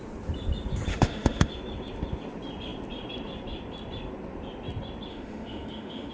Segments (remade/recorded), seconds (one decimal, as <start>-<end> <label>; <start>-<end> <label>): 0.0-0.9 recorded; 0.9-1.5 remade; 1.5-5.1 recorded; 5.1-6.1 remade